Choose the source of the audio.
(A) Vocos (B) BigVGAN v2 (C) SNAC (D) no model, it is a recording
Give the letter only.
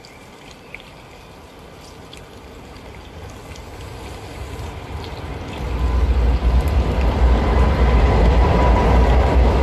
D